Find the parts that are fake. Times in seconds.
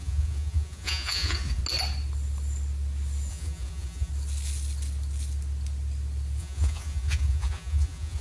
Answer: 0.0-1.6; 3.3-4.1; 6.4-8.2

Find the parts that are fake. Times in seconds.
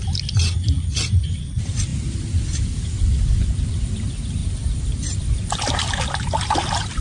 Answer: 0.0-7.0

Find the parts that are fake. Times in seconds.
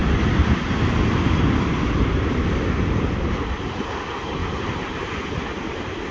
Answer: none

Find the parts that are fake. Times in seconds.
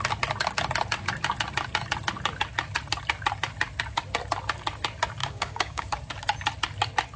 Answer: 5.2-5.9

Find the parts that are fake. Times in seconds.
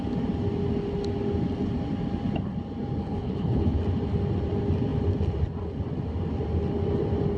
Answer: 3.0-3.8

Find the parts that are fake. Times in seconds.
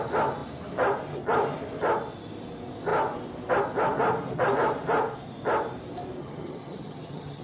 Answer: 6.2-7.4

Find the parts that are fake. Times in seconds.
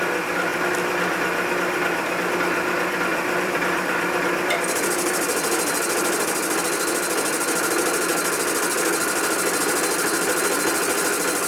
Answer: 3.1-6.6